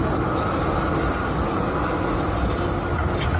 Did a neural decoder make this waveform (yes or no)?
no